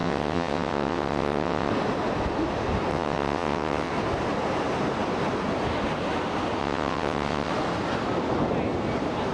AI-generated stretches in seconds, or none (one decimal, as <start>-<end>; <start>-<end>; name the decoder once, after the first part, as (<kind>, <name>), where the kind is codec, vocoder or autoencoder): 0.0-1.7 (vocoder, WaveNeXt); 2.9-3.9; 6.6-7.5

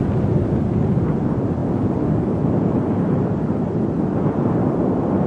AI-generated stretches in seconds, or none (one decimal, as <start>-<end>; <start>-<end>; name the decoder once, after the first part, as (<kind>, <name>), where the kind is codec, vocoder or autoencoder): 0.0-5.3 (vocoder, BigVGAN v2)